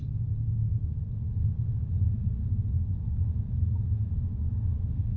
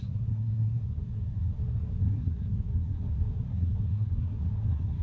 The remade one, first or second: second